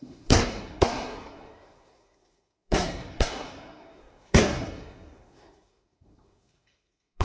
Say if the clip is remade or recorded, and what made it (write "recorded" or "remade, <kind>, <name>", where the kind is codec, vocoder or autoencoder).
remade, codec, SNAC